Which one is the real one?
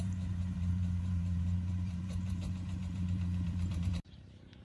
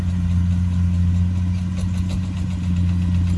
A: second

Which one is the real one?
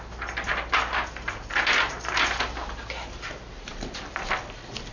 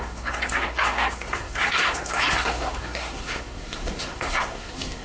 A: first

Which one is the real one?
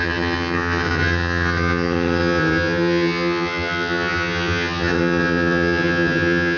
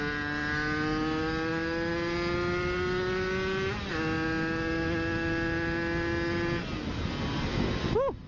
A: second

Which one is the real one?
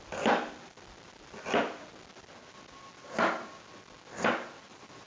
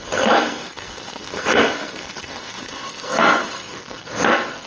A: first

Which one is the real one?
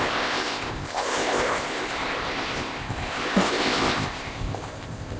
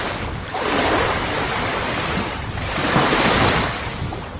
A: second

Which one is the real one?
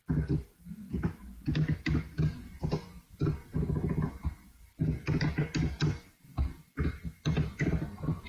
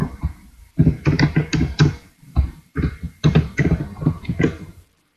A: first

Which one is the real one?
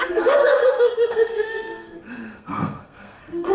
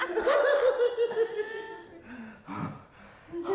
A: second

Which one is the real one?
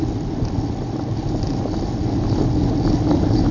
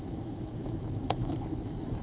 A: first